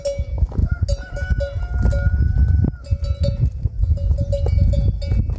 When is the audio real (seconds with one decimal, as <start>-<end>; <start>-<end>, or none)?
0.0-5.4